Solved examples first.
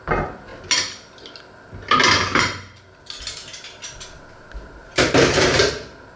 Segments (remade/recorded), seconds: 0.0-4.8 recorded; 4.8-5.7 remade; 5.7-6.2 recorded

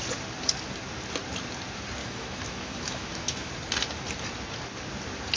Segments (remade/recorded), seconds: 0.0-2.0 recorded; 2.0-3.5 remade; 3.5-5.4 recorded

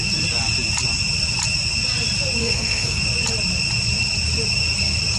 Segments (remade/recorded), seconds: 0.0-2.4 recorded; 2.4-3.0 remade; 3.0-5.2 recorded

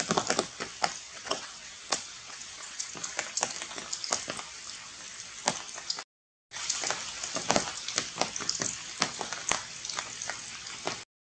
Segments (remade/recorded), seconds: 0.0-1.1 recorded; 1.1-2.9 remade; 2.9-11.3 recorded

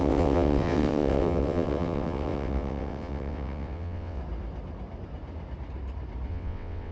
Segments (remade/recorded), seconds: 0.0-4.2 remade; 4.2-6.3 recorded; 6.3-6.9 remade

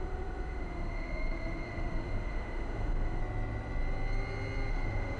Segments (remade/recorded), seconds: 0.0-3.2 remade; 3.2-4.7 recorded; 4.7-5.2 remade

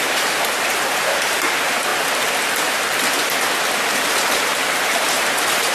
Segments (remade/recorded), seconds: 0.0-1.9 remade; 1.9-4.0 recorded; 4.0-5.7 remade

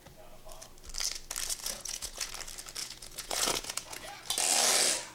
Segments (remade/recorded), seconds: 0.0-1.6 recorded; 1.6-2.3 remade; 2.3-2.8 recorded; 2.8-4.2 remade; 4.2-5.1 recorded